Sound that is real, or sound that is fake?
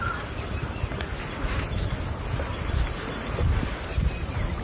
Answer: real